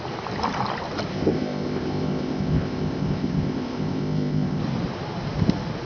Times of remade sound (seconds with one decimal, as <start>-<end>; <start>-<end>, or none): 1.1-4.6